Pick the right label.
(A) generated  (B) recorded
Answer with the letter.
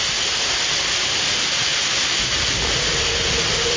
B